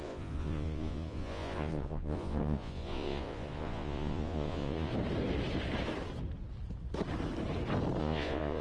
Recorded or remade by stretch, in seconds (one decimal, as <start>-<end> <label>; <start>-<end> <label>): 0.0-4.9 remade; 4.9-8.0 recorded; 8.0-8.6 remade